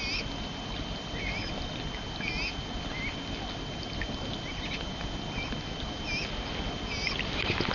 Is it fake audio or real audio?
real